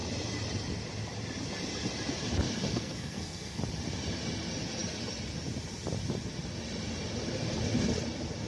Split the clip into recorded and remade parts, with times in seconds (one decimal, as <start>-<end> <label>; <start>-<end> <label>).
0.0-2.7 recorded; 2.7-3.6 remade; 3.6-8.5 recorded